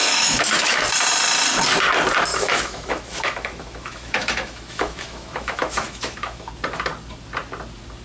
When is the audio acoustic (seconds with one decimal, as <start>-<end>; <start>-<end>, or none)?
0.8-2.3; 6.5-8.0